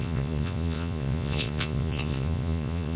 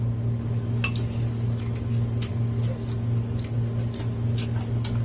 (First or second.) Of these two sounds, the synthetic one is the first